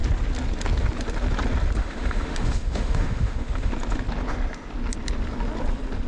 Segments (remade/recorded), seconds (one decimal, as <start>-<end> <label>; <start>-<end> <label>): 0.0-1.8 recorded; 1.8-3.7 remade; 3.7-6.1 recorded